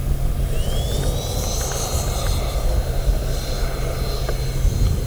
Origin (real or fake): real